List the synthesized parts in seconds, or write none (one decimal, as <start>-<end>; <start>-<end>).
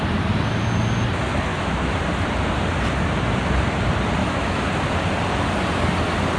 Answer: 1.5-2.0; 4.2-4.7